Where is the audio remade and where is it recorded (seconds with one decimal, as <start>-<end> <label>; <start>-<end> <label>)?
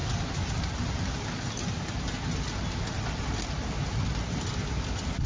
0.0-5.3 recorded